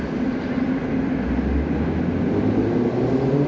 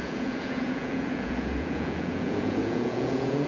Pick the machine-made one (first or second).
second